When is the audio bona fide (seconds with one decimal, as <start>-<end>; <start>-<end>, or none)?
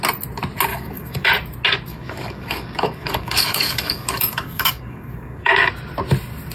0.0-0.7; 1.3-1.9; 5.7-6.5